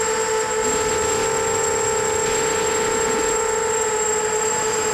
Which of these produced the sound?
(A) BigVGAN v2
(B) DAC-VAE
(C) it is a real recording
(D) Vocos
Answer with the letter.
C